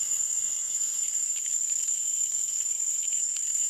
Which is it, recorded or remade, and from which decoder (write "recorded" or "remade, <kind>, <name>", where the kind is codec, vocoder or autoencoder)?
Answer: remade, codec, SNAC